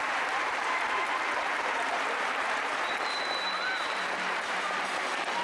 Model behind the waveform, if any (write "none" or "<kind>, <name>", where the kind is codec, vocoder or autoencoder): vocoder, BigVGAN v2